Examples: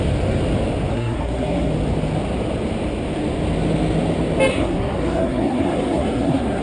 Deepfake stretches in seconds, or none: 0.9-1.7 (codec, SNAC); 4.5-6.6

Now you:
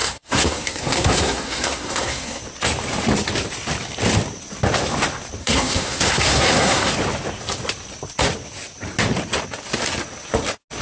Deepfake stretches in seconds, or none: 0.0-2.4 (codec, SNAC); 5.4-6.9

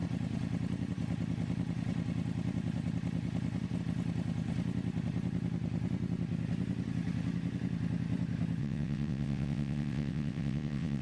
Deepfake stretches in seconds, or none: 8.6-11.0 (vocoder, WaveNeXt)

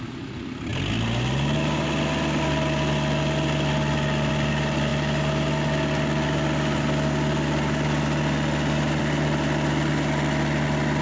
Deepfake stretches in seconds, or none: none